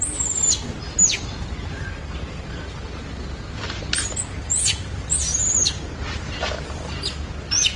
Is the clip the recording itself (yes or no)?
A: yes